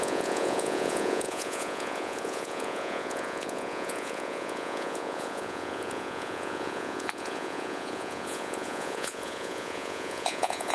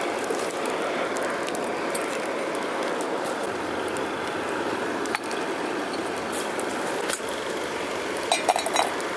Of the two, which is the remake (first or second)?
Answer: first